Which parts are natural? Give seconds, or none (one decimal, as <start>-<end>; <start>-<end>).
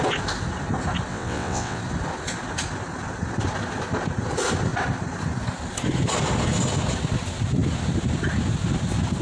0.0-1.1; 1.8-9.2